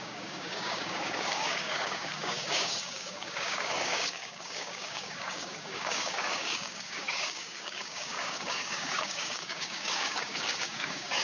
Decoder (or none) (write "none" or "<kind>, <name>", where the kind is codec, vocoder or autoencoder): codec, DAC